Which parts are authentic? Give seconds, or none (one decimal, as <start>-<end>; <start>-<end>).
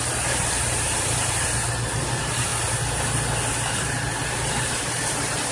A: 2.5-3.8